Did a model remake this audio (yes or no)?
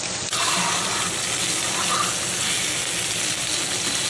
no